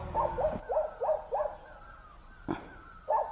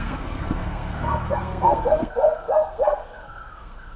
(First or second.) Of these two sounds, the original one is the first